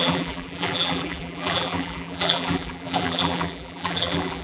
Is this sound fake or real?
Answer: fake